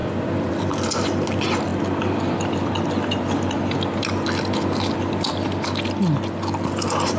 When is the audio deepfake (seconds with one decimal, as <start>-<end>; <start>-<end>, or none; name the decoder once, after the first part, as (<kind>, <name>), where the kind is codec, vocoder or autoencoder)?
none